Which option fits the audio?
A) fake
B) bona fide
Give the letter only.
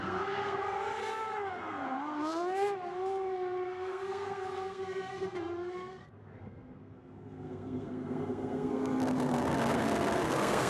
A